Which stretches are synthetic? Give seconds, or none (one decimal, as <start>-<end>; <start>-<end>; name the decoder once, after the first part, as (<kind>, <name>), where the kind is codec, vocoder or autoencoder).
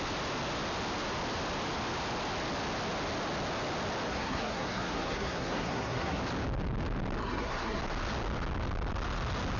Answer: 4.1-6.2 (codec, SNAC); 7.2-7.8